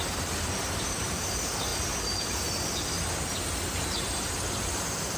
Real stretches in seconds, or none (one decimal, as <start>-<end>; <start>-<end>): 1.7-3.8